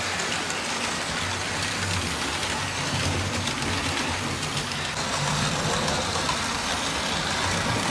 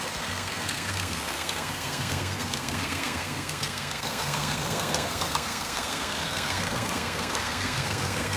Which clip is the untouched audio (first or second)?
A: first